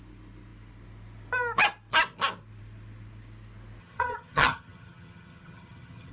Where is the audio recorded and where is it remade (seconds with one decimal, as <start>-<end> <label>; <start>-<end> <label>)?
0.0-3.8 recorded; 3.8-6.1 remade